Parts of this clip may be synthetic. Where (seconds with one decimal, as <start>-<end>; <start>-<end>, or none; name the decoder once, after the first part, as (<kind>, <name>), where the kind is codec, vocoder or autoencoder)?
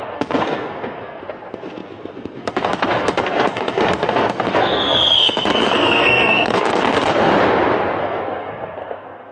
0.0-7.3 (codec, SNAC); 8.0-9.3